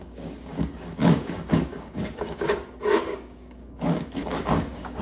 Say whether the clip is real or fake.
fake